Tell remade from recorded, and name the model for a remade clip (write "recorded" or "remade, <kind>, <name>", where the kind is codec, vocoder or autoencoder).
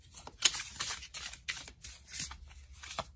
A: recorded